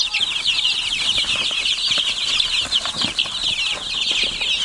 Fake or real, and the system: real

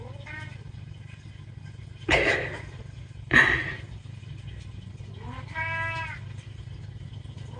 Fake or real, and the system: real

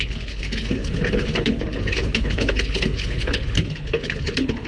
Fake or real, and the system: fake, codec, HILCodec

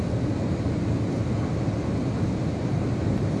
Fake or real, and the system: real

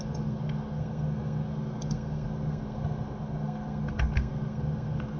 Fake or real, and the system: fake, codec, SNAC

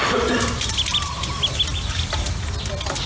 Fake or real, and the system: real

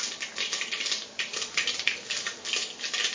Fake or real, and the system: real